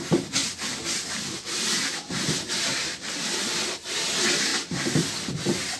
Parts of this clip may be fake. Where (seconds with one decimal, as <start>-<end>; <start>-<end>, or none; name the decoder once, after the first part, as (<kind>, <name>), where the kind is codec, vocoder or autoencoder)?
0.4-3.9 (vocoder, BigVGAN v2); 4.5-5.1